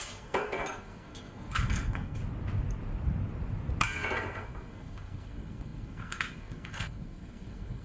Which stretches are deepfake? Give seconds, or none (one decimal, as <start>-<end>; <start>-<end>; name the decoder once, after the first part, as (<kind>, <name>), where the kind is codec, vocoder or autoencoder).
0.0-2.2 (codec, SNAC); 3.8-7.8